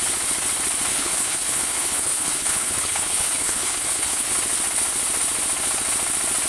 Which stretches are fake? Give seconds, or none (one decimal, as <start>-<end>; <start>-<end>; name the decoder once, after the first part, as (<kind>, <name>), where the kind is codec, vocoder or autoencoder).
0.9-4.3 (codec, HILCodec)